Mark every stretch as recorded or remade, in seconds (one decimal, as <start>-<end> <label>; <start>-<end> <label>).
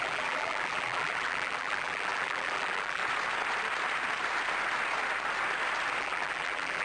0.0-3.0 remade; 3.0-6.0 recorded; 6.0-6.8 remade